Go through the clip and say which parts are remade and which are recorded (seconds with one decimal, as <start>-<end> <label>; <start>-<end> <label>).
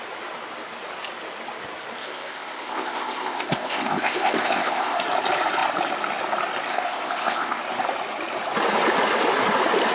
0.0-2.0 recorded; 2.0-5.0 remade; 5.0-6.7 recorded; 6.7-7.6 remade; 7.6-9.9 recorded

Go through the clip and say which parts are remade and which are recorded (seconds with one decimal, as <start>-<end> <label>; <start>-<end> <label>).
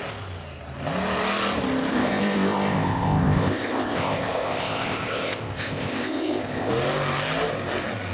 0.0-1.9 recorded; 1.9-6.7 remade; 6.7-8.1 recorded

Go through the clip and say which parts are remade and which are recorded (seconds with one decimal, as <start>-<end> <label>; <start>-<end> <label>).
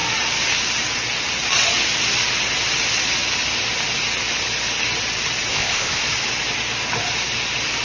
0.0-5.5 recorded; 5.5-6.0 remade; 6.0-7.8 recorded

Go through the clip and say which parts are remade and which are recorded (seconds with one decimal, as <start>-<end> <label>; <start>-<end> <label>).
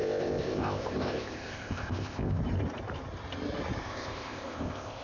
0.0-2.4 remade; 2.4-3.8 recorded; 3.8-5.0 remade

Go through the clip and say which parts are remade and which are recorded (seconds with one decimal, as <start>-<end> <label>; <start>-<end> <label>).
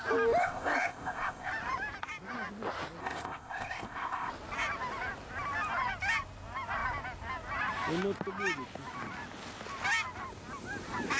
0.0-0.4 recorded; 0.4-1.5 remade; 1.5-3.0 recorded; 3.0-4.3 remade; 4.3-11.2 recorded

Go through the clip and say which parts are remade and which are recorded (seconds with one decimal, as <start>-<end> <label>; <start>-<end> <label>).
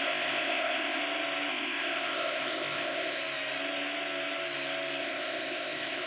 0.0-1.0 remade; 1.0-1.5 recorded; 1.5-3.2 remade; 3.2-5.0 recorded; 5.0-6.1 remade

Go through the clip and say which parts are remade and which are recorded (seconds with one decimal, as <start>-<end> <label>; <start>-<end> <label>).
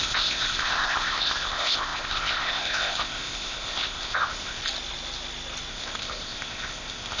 0.0-4.6 remade; 4.6-5.7 recorded; 5.7-7.2 remade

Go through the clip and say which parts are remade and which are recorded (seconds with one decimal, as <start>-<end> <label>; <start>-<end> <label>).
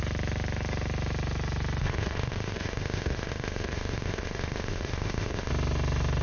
0.0-1.8 recorded; 1.8-5.5 remade; 5.5-6.2 recorded